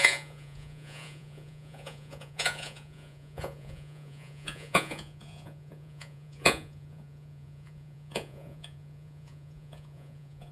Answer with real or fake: fake